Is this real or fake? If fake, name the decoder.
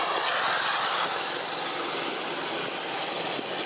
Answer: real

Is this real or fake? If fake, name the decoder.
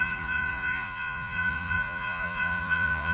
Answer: fake, vocoder, Vocos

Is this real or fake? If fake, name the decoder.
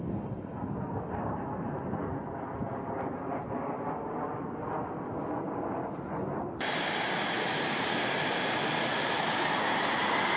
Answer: real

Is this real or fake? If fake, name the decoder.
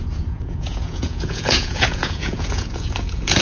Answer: fake, vocoder, Vocos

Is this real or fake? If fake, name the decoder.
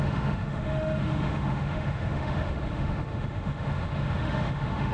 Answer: fake, autoencoder, DAC-VAE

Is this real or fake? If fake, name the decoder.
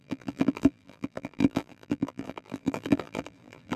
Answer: fake, vocoder, BigVGAN v2